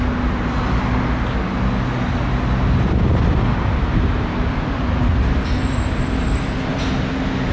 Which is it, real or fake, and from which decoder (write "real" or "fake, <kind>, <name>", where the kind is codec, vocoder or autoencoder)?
real